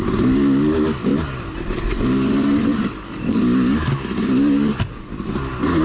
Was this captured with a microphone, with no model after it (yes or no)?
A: yes